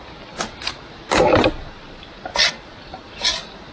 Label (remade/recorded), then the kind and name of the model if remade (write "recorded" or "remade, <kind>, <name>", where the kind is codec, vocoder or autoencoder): recorded